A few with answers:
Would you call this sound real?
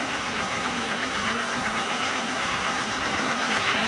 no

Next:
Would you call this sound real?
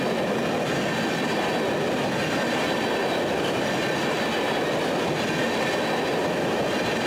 yes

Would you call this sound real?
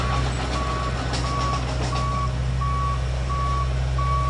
yes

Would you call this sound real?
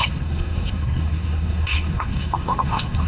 no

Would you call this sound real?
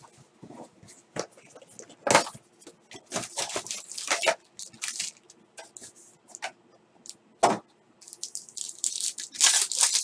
yes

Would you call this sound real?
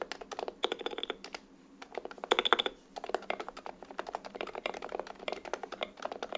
yes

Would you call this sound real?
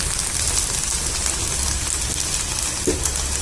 yes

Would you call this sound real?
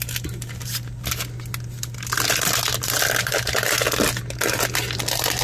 yes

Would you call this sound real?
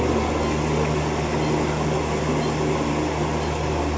yes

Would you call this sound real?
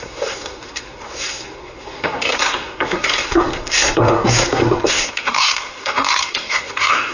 no